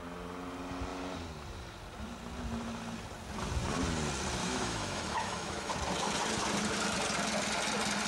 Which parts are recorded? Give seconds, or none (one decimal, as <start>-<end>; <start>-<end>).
0.0-4.4; 5.7-8.1